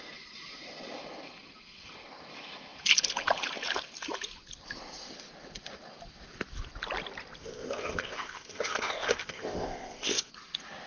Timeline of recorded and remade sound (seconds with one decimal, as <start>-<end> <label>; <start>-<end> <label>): 0.0-7.4 recorded; 7.4-10.3 remade; 10.3-10.9 recorded